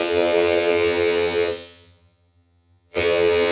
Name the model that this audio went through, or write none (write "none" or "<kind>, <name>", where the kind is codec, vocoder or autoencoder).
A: vocoder, HiFi-GAN